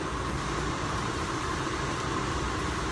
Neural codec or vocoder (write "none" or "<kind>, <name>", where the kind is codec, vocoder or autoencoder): vocoder, BigVGAN v2